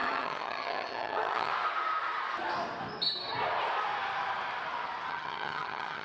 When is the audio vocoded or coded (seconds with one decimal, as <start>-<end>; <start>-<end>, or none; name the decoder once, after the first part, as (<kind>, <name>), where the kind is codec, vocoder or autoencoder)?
0.0-1.5 (vocoder, HiFi-GAN); 5.1-6.0